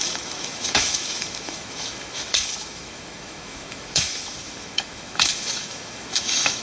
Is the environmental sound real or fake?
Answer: fake